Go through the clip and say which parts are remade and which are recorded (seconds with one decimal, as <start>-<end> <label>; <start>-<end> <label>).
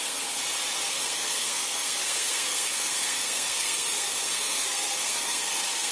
0.0-0.4 remade; 0.4-0.9 recorded; 0.9-5.9 remade